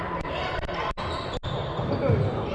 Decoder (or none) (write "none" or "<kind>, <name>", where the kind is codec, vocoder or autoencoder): none